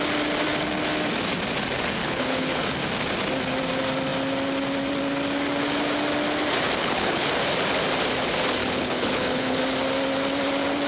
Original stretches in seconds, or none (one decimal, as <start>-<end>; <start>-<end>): 0.0-2.0; 2.6-6.8; 7.3-8.6; 9.6-10.9